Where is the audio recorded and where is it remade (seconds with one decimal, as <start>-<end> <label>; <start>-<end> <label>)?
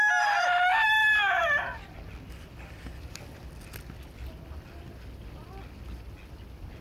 0.0-6.8 recorded